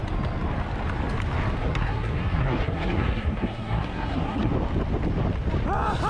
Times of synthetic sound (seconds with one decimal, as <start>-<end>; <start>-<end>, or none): 1.6-4.5